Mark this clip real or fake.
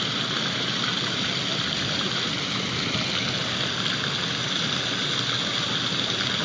real